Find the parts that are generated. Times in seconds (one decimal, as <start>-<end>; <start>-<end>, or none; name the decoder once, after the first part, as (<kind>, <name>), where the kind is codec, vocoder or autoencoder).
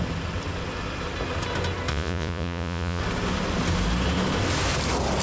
1.9-3.0 (vocoder, Vocos)